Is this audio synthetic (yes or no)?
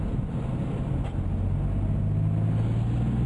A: no